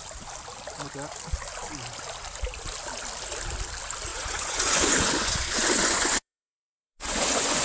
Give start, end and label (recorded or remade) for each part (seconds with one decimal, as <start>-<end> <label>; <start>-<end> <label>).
0.0-4.1 recorded; 4.1-7.6 remade